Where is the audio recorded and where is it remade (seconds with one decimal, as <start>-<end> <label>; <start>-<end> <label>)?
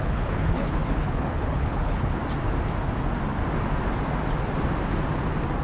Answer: 0.0-2.2 remade; 2.2-5.6 recorded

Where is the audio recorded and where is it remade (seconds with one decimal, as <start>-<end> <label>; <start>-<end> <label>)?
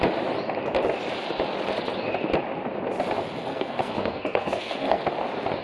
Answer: 0.0-3.5 recorded; 3.5-5.0 remade; 5.0-5.6 recorded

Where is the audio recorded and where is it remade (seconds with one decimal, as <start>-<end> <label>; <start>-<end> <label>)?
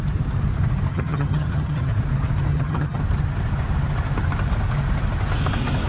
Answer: 0.0-0.9 recorded; 0.9-1.9 remade; 1.9-2.5 recorded; 2.5-3.0 remade; 3.0-5.9 recorded